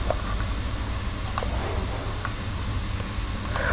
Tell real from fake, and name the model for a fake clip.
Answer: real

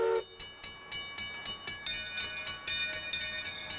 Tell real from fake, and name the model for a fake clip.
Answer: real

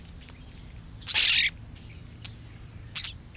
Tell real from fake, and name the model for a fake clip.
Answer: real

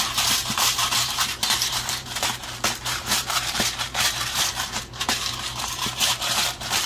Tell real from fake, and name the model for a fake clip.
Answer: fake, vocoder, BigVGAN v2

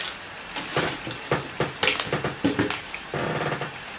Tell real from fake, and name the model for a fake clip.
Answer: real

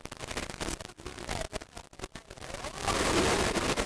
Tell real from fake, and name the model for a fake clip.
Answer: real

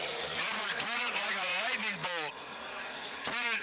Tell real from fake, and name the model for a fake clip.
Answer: fake, vocoder, Vocos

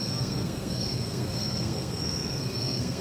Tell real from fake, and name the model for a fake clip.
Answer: fake, codec, SNAC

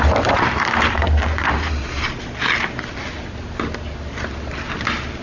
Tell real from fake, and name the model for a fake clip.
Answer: real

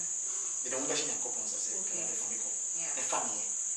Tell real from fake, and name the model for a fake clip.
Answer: real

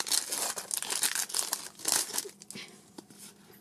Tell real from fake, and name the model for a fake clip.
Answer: real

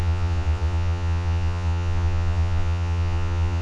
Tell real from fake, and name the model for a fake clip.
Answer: fake, vocoder, Vocos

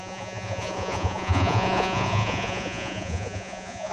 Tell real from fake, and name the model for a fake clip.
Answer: fake, vocoder, Vocos